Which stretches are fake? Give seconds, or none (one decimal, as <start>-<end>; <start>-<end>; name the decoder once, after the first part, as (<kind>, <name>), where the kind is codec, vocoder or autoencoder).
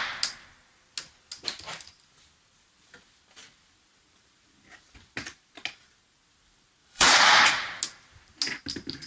6.8-7.8 (vocoder, Vocos)